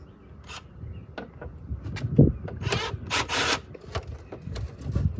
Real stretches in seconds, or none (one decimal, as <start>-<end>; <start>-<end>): 0.0-5.2